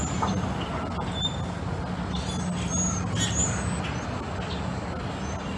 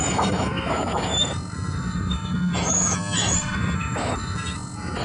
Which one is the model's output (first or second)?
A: second